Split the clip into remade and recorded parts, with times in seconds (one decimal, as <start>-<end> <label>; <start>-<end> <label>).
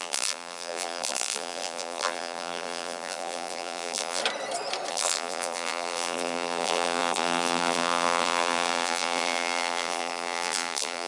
0.0-4.2 remade; 4.2-4.9 recorded; 4.9-11.1 remade